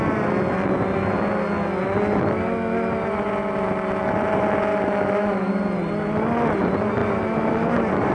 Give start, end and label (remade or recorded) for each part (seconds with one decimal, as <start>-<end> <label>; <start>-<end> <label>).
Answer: 0.0-4.7 recorded; 4.7-5.5 remade; 5.5-8.1 recorded